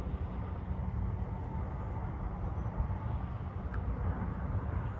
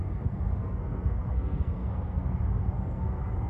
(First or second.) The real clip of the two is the first